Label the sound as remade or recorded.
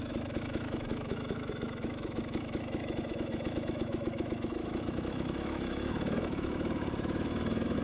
remade